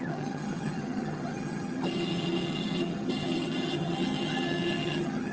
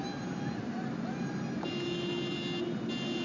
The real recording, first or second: second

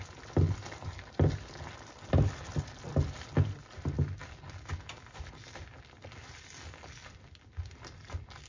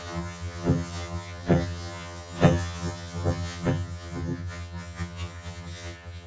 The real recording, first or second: first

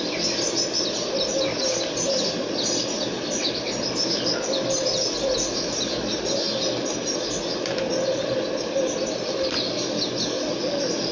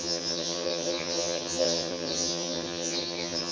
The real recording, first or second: first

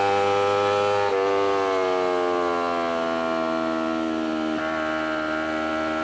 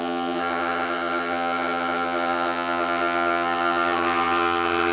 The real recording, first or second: first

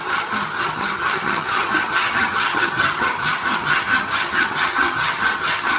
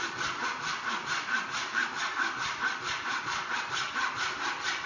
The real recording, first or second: second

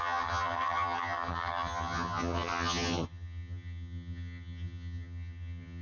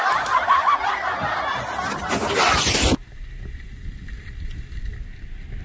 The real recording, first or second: second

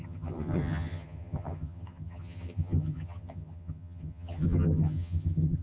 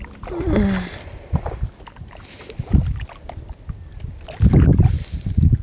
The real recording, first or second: second